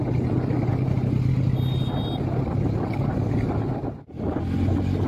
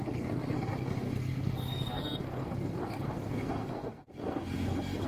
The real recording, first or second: first